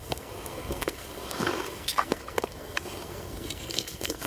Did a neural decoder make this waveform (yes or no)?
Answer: yes